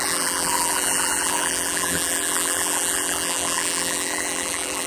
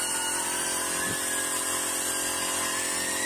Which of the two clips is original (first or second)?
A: second